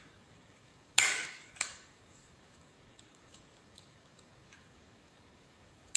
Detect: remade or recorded remade